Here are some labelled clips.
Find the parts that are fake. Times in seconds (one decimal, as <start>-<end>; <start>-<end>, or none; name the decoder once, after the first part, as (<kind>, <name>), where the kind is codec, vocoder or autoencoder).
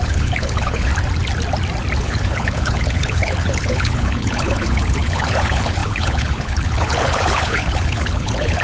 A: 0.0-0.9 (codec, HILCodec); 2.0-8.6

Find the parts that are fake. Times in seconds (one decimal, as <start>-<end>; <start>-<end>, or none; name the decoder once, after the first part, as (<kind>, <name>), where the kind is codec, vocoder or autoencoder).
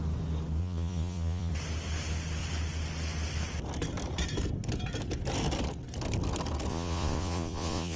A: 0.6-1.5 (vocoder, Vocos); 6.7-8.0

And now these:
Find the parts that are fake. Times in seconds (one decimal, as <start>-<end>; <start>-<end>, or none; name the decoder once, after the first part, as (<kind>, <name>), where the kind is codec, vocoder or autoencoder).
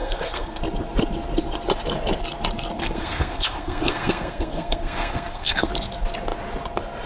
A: 0.0-0.6 (codec, SNAC); 2.8-5.7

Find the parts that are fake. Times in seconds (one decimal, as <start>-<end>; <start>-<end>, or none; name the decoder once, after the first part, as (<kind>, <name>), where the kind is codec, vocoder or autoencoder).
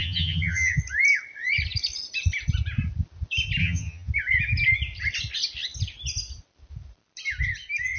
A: 0.0-0.8 (vocoder, HiFi-GAN); 3.6-4.1